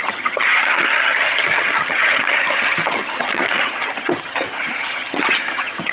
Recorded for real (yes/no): no